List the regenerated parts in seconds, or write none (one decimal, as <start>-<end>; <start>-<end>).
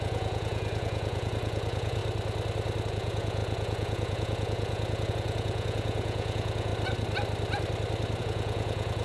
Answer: 0.0-2.0; 2.9-6.7; 8.2-9.0